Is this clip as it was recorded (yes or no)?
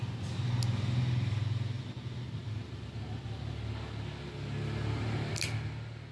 yes